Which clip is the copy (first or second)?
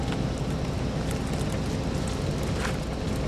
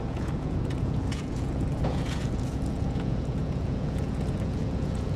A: second